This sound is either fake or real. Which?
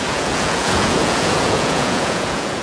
fake